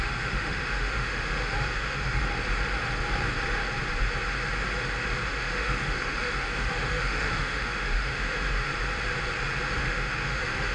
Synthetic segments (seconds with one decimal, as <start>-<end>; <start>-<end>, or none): 0.0-2.2; 5.3-8.7; 9.8-10.7